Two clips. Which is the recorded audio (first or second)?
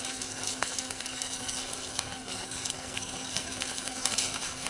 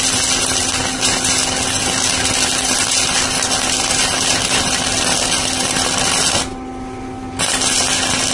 second